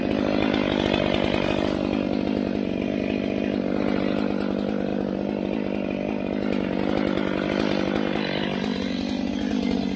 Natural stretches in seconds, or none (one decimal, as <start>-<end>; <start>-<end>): 0.0-10.0